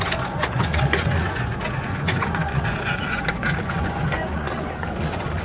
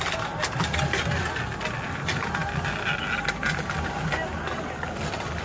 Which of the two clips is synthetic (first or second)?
first